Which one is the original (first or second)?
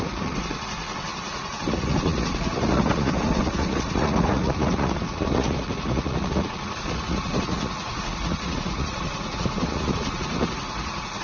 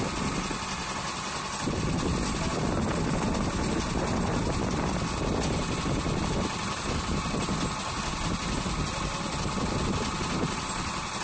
second